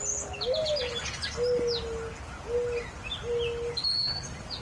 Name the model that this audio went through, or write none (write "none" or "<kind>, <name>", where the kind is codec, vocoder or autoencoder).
none